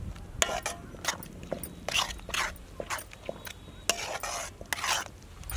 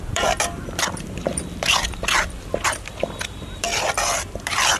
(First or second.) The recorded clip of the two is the first